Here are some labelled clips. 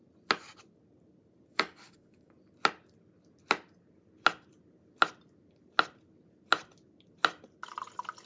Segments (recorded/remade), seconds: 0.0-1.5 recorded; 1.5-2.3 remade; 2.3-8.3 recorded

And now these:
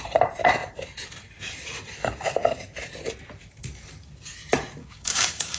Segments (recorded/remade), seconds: 0.0-4.8 recorded; 4.8-5.6 remade